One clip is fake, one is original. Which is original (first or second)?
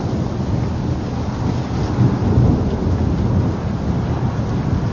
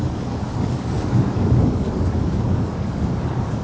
first